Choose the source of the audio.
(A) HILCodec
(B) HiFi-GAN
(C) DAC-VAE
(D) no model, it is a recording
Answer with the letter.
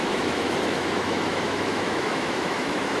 C